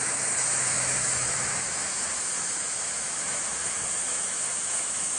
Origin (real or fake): fake